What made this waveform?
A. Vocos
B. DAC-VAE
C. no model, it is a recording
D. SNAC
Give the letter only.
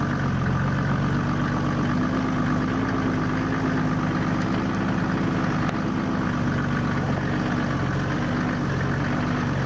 C